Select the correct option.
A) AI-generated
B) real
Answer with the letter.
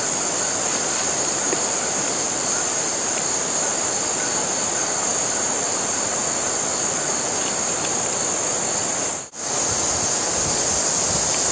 B